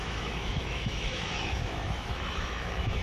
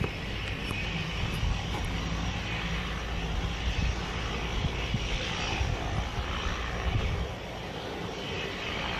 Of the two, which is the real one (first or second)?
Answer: second